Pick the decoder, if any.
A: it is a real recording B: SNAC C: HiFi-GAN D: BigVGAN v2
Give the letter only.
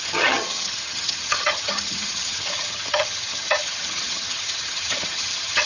C